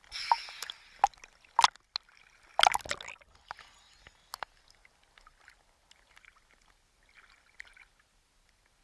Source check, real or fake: real